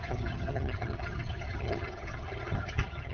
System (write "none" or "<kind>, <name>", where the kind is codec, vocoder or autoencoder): vocoder, HiFi-GAN